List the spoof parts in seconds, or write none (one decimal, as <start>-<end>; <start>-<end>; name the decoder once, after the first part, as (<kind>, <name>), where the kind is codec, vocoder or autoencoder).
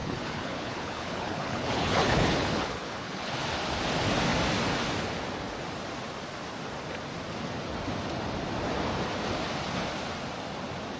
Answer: 0.0-3.3 (codec, HILCodec)